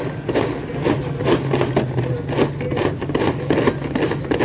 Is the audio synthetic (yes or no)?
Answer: no